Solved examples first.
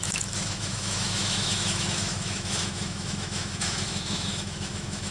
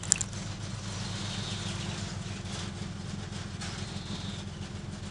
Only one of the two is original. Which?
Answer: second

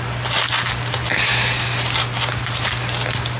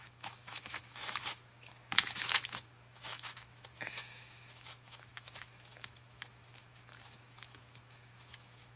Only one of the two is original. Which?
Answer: first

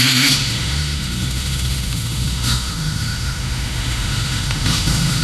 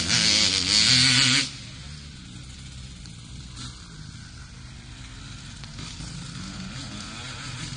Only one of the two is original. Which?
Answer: second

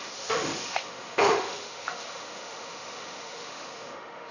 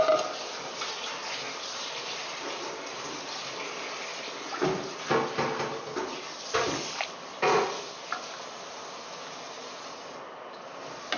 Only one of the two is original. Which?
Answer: second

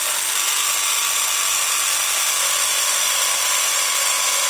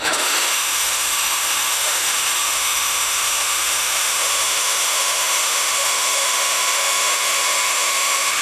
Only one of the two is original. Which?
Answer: first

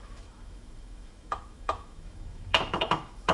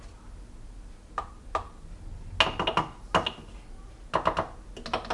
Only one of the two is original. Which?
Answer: second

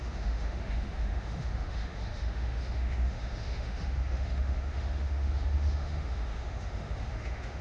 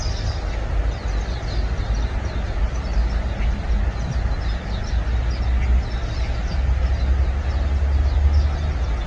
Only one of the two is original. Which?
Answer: second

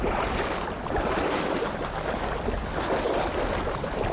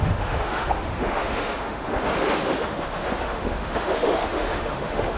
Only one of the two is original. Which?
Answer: first